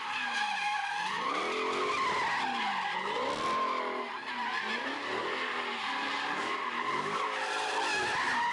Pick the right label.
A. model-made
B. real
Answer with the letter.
B